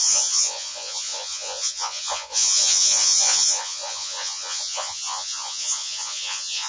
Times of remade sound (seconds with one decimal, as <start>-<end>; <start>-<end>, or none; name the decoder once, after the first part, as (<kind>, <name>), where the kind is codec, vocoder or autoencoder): 0.0-6.7 (vocoder, Vocos)